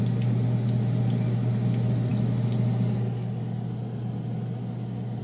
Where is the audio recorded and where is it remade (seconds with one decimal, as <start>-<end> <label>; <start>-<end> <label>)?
0.0-5.2 recorded